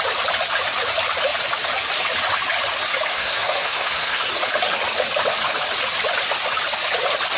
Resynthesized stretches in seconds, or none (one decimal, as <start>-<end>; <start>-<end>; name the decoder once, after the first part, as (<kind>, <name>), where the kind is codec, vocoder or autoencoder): 3.1-4.3 (codec, SNAC)